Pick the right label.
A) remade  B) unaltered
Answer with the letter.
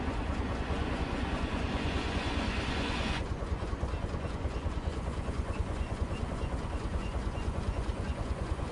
A